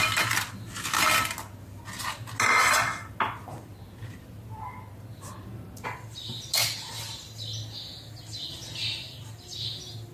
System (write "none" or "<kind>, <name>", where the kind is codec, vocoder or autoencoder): none